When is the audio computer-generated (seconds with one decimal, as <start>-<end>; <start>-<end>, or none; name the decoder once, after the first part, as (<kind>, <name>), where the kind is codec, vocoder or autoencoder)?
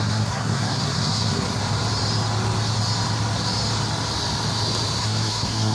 0.0-1.6 (codec, SNAC); 5.0-5.7